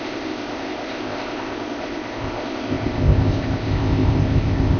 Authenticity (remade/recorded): remade